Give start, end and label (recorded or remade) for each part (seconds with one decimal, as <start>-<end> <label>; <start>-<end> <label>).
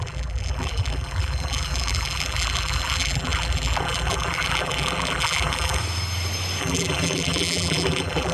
0.0-5.8 remade; 5.8-6.6 recorded; 6.6-8.3 remade